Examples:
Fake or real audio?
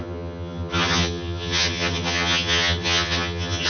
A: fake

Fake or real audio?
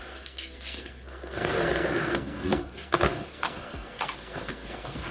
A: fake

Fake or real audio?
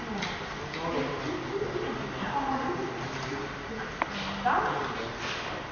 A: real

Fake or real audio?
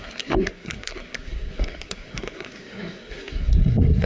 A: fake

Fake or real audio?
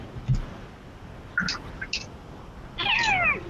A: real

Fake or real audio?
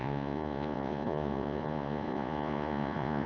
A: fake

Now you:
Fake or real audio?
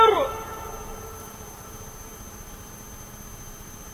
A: fake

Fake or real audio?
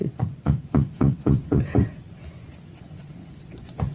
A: fake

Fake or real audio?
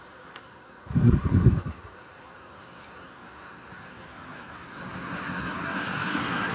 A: fake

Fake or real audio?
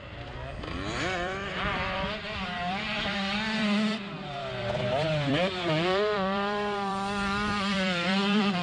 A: fake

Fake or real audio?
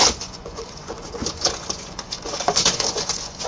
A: fake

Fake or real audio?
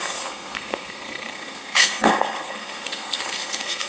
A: fake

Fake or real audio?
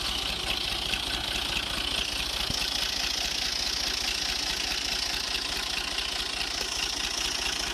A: real